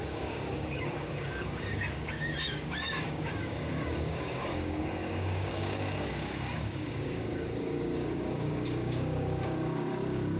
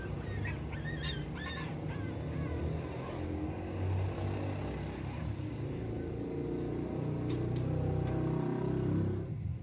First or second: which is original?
second